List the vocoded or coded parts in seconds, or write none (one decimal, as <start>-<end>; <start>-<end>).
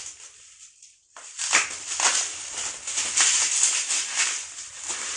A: 0.0-1.4; 4.4-5.2